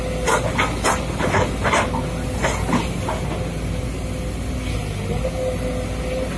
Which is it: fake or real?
real